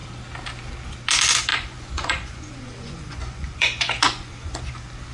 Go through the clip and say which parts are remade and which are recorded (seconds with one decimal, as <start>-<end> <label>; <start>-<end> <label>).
0.0-1.5 recorded; 1.5-4.6 remade; 4.6-5.1 recorded

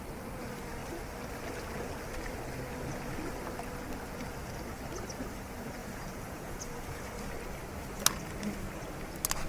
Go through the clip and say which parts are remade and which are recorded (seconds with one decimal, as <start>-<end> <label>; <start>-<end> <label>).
0.0-5.8 recorded; 5.8-7.1 remade; 7.1-9.5 recorded

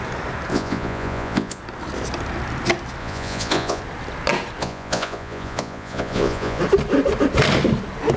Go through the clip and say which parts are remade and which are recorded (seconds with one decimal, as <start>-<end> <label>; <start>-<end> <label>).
0.0-0.5 recorded; 0.5-1.6 remade; 1.6-3.0 recorded; 3.0-3.8 remade; 3.8-4.6 recorded; 4.6-6.6 remade; 6.6-8.2 recorded